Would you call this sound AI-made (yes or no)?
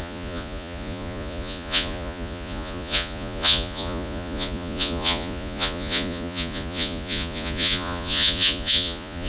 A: yes